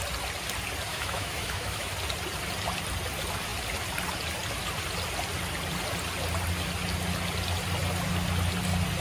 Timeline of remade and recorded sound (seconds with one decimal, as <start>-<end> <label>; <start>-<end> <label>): 0.0-0.9 recorded; 0.9-1.9 remade; 1.9-9.0 recorded

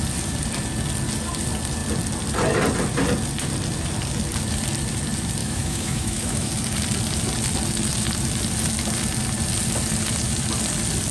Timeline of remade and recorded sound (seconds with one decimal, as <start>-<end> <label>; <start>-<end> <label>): 0.0-5.4 recorded; 5.4-6.5 remade; 6.5-11.1 recorded

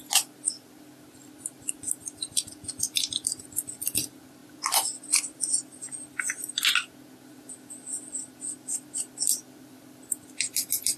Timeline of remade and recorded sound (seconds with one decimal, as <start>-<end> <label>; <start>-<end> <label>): 0.0-11.0 recorded

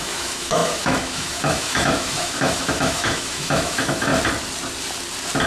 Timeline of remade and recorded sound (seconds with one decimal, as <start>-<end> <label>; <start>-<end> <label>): 0.0-4.1 remade; 4.1-5.5 recorded

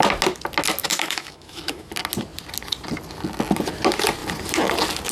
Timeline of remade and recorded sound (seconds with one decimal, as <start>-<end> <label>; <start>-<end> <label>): 0.0-0.8 recorded; 0.8-1.9 remade; 1.9-5.1 recorded

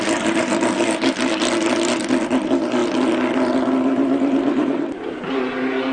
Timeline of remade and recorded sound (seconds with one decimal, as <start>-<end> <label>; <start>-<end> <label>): 0.0-5.9 recorded